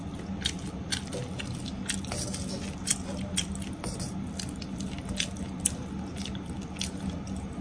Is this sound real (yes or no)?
yes